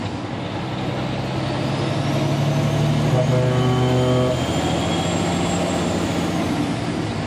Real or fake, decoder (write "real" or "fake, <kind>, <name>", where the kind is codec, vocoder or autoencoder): real